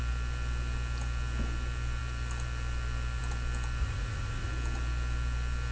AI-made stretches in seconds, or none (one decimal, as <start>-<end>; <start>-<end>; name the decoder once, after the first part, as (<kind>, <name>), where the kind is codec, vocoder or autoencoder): 3.8-4.5 (vocoder, Vocos)